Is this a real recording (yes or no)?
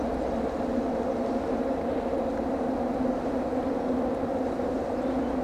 yes